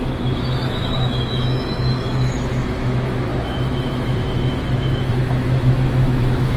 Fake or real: fake